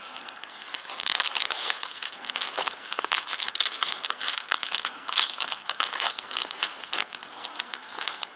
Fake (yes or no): yes